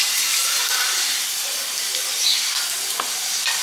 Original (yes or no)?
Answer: yes